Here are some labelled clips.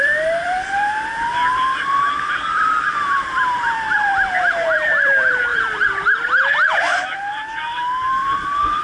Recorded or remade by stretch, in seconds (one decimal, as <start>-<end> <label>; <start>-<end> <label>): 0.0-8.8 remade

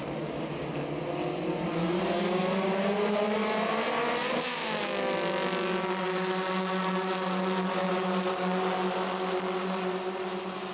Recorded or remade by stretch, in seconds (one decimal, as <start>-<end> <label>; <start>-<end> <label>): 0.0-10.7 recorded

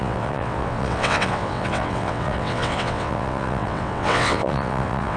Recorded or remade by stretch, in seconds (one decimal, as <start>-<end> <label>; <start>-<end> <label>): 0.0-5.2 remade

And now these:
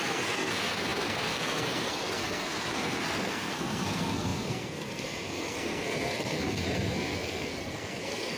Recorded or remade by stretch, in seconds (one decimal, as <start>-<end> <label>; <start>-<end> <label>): 0.0-8.4 remade